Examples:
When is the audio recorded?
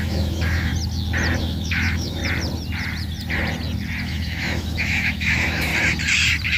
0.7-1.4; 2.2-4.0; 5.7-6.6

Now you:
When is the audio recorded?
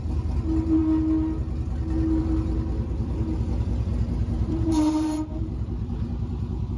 0.0-3.9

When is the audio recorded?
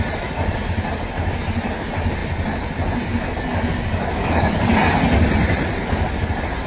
0.0-3.5; 4.7-5.8; 6.3-6.7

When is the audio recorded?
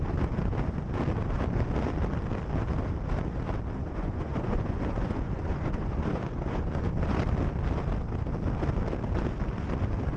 0.0-3.8; 6.8-10.2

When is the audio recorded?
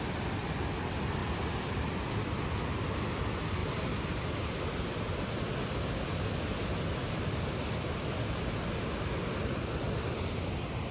0.0-10.9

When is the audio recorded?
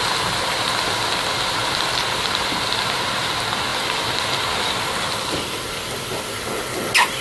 0.0-7.2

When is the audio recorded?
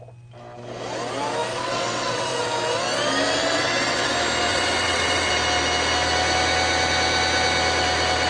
0.0-1.5; 2.5-3.4; 4.1-4.5; 5.3-8.3